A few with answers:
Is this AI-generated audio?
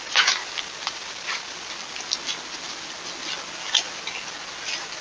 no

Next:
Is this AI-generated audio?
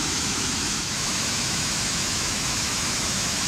yes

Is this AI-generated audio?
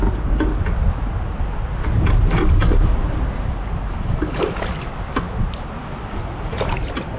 no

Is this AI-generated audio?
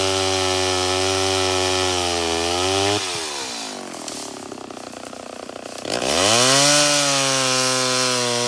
no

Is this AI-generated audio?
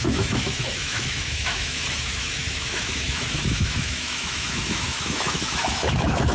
yes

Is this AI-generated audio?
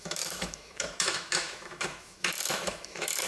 yes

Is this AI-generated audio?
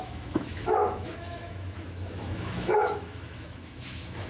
yes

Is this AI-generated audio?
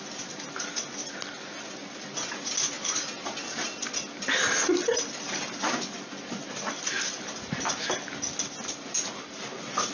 no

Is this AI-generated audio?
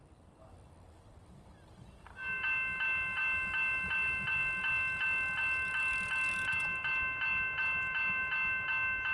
no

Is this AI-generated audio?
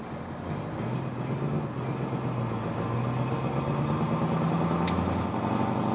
no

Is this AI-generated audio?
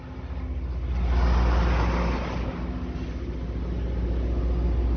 no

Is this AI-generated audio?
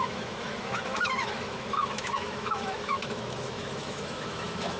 yes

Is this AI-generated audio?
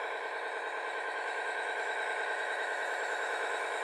yes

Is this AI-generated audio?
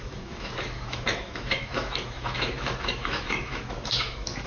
yes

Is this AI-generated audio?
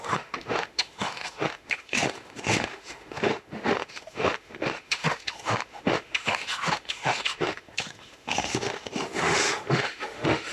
yes